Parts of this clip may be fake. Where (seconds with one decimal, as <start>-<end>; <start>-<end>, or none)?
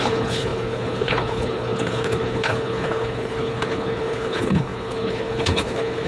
0.0-6.1